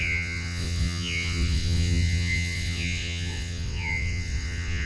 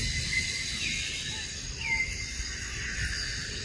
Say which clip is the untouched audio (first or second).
second